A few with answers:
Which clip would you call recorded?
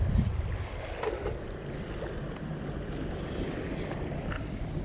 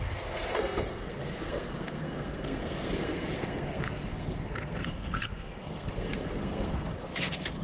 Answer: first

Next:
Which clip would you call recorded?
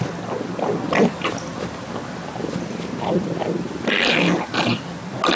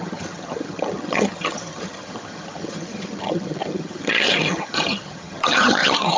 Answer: first